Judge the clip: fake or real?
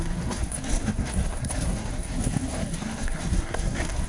fake